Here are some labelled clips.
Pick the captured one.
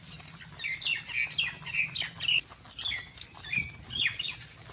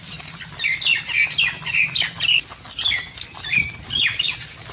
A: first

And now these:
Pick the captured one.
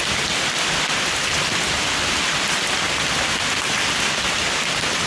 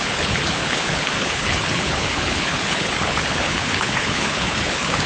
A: first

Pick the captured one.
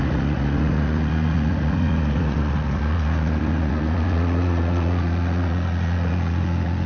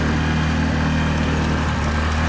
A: second